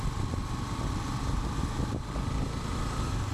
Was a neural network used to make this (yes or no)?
no